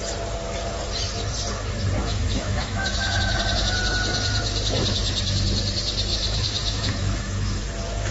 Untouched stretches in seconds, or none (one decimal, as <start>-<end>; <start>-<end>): 0.0-2.0; 3.4-6.1; 7.6-8.1